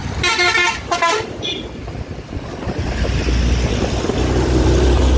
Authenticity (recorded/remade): recorded